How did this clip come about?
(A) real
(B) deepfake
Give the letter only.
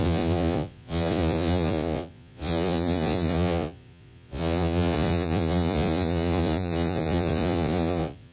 B